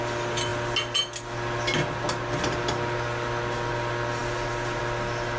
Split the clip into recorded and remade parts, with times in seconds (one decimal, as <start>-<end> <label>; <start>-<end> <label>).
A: 0.0-5.4 recorded